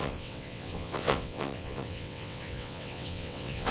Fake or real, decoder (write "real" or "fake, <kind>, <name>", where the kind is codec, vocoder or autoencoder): fake, vocoder, WaveNeXt